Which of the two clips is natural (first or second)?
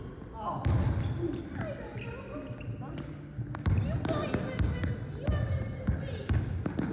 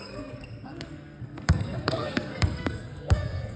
first